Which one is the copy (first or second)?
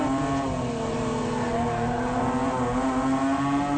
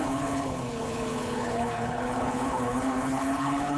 second